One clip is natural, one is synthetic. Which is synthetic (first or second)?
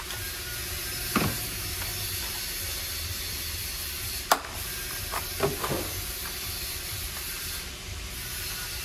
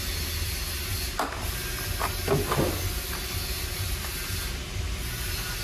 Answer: first